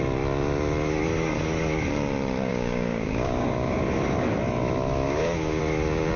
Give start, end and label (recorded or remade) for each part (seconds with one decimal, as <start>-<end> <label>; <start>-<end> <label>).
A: 0.0-2.5 recorded; 2.5-3.8 remade; 3.8-5.0 recorded; 5.0-5.6 remade; 5.6-6.2 recorded